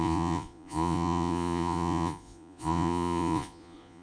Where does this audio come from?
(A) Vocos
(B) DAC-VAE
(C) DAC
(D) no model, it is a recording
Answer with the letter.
A